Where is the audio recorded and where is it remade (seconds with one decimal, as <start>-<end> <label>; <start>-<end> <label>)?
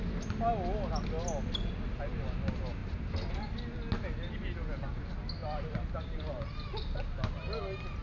0.0-5.4 recorded; 5.4-6.3 remade; 6.3-8.0 recorded